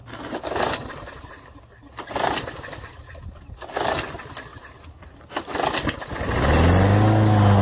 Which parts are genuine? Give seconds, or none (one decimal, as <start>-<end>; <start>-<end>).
0.0-4.5; 6.2-7.6